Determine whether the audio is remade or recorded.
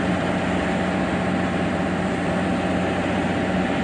recorded